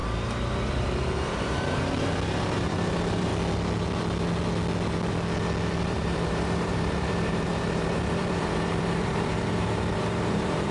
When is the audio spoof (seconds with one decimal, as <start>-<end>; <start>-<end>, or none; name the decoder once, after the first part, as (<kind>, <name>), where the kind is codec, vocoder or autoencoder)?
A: 0.7-3.3 (vocoder, BigVGAN v2); 5.8-10.7